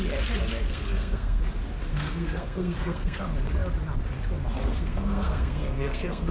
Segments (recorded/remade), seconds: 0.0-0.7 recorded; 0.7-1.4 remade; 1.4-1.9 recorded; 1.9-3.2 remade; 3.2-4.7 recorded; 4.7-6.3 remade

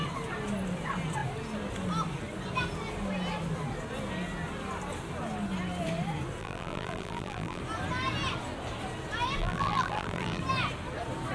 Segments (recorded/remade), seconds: 0.0-6.4 recorded; 6.4-7.6 remade; 7.6-9.4 recorded; 9.4-10.4 remade; 10.4-11.3 recorded

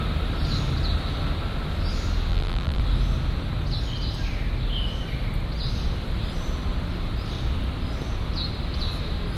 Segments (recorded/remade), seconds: 0.0-2.3 recorded; 2.3-2.8 remade; 2.8-9.4 recorded

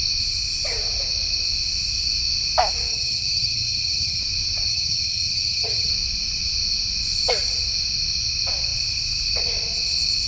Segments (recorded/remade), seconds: 0.0-2.9 recorded; 2.9-4.2 remade; 4.2-4.7 recorded; 4.7-5.9 remade; 5.9-10.3 recorded